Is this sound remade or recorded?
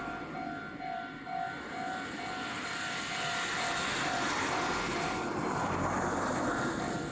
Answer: remade